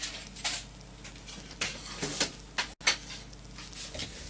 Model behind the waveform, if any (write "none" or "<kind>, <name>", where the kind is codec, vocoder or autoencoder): none